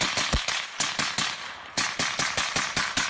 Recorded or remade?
recorded